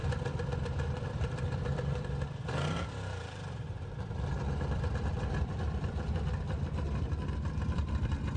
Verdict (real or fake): fake